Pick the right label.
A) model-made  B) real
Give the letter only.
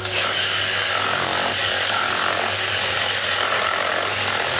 A